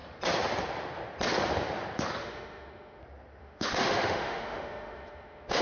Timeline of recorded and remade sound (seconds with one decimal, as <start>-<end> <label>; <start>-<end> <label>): 0.0-2.2 recorded; 2.2-3.0 remade; 3.0-3.4 recorded; 3.4-5.6 remade